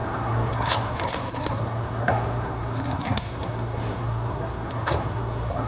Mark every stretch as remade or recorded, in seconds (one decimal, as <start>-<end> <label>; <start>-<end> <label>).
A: 0.0-5.7 remade